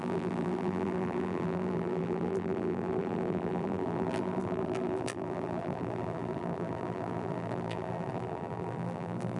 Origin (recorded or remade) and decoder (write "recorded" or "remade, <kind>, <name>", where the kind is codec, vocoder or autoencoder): remade, vocoder, BigVGAN v2